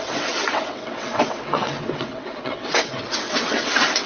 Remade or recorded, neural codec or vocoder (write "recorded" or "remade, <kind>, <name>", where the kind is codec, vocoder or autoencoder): remade, vocoder, WaveNeXt